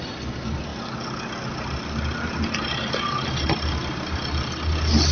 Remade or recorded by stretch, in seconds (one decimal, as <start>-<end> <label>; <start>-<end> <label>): 0.0-5.1 recorded